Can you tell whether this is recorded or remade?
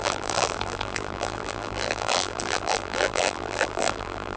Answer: remade